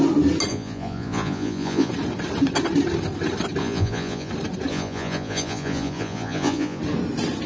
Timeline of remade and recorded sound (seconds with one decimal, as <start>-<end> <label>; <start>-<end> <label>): 0.0-0.5 recorded; 0.5-1.9 remade; 1.9-3.6 recorded; 3.6-4.3 remade; 4.3-4.7 recorded; 4.7-6.8 remade; 6.8-7.5 recorded